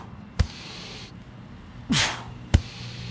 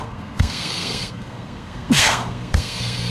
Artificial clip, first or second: second